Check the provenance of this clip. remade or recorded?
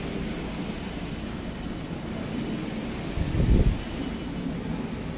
recorded